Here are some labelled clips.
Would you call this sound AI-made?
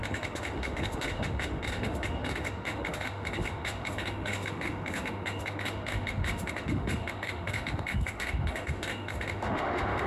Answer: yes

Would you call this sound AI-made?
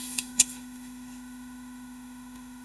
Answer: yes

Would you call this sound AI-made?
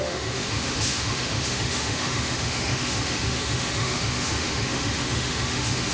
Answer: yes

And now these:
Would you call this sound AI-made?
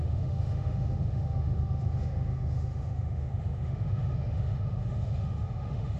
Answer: yes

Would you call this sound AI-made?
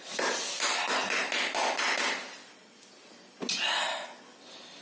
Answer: no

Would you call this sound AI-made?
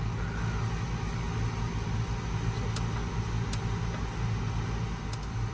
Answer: no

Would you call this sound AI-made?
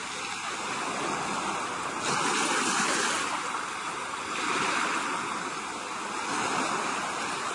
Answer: no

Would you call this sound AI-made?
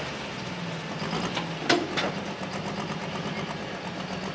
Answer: no